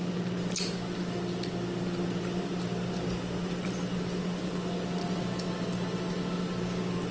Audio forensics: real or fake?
real